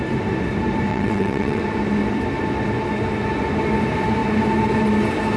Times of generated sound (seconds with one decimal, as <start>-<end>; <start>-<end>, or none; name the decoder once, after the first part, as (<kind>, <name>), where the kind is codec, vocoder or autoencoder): 0.9-1.6 (vocoder, WaveNeXt)